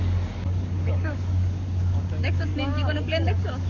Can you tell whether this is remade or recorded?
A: remade